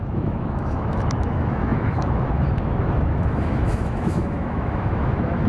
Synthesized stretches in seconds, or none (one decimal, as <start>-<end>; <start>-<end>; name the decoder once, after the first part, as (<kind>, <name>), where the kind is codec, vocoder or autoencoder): 0.0-5.5 (autoencoder, DAC-VAE)